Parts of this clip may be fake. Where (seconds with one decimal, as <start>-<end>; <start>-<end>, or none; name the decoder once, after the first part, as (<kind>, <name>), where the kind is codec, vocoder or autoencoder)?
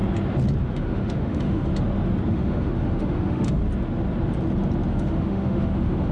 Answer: 0.6-1.7 (autoencoder, DAC-VAE); 2.3-3.6; 4.9-6.1